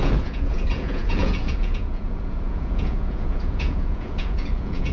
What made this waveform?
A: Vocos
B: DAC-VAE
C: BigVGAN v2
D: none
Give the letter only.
A